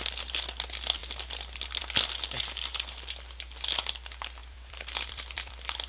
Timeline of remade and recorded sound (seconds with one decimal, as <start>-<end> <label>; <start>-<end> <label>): 0.0-4.4 recorded; 4.4-5.9 remade